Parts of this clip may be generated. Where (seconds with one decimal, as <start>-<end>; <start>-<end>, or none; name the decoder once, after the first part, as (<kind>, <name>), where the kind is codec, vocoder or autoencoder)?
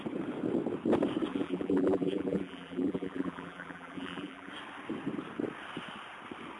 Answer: 1.3-4.5 (vocoder, BigVGAN v2)